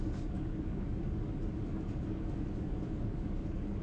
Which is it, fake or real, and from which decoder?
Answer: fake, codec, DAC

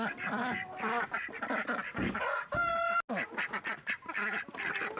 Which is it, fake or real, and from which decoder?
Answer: real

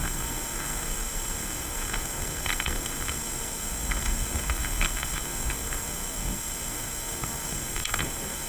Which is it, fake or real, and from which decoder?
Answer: fake, codec, SNAC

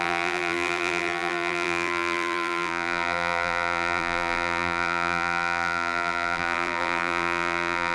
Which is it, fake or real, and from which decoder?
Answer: fake, vocoder, BigVGAN v2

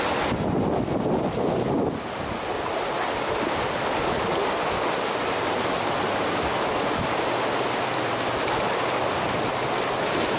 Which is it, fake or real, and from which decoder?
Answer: real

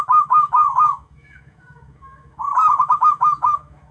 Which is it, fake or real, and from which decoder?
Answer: fake, autoencoder, DAC-VAE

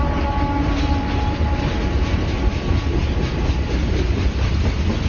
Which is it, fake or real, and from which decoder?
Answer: real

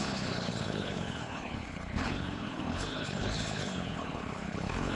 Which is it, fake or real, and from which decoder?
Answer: fake, codec, HILCodec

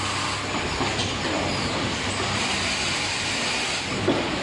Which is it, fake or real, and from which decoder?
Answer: real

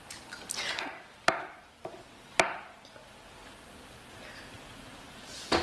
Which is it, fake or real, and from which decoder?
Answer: real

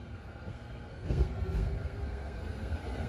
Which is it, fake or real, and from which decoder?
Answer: fake, codec, SNAC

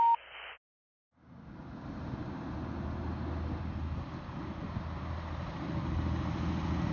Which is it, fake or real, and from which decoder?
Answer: real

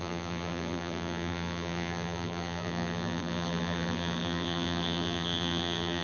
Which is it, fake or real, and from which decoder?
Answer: fake, vocoder, BigVGAN v2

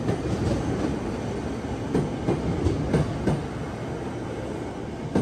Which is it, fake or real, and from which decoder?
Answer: real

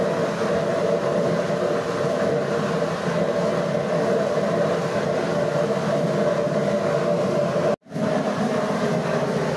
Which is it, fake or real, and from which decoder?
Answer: real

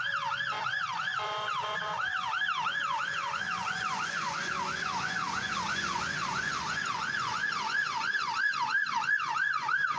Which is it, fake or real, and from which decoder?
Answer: fake, vocoder, Vocos